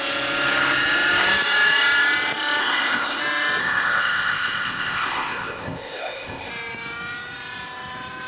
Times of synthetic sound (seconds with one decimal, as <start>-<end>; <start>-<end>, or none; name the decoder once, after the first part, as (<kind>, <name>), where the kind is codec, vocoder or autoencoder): 2.6-3.2 (codec, ZipCodec); 3.6-6.5